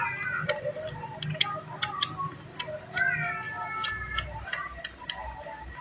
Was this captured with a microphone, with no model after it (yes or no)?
yes